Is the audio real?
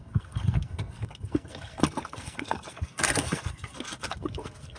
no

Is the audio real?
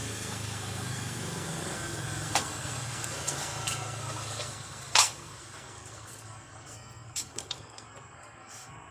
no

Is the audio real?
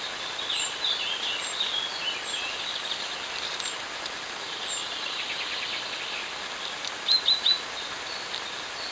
yes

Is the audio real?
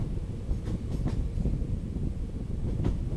yes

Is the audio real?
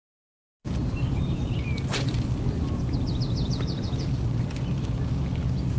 yes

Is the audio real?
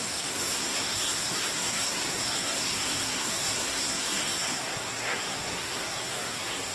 no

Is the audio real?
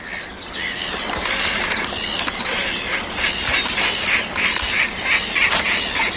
yes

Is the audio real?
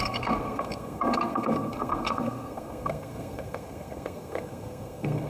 no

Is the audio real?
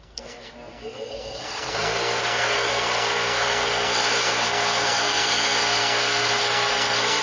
no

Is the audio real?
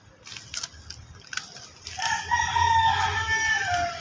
yes